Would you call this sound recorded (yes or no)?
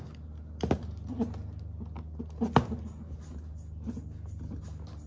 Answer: yes